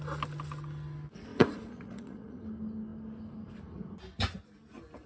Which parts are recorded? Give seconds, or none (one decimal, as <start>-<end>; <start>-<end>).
0.0-1.3; 2.4-5.1